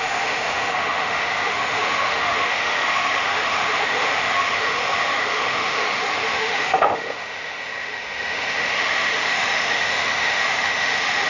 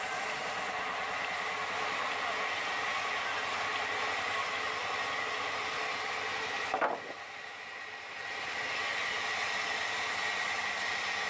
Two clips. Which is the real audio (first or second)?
second